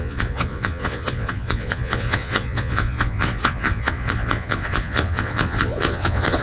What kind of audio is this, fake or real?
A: fake